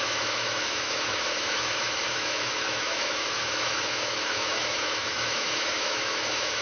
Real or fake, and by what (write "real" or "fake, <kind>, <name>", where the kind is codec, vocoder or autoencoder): fake, autoencoder, DAC-VAE